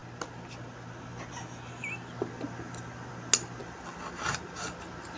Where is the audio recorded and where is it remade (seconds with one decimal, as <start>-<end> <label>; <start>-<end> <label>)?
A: 0.0-5.2 recorded